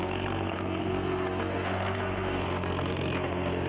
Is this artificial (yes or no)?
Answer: yes